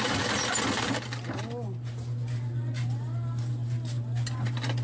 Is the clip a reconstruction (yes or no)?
no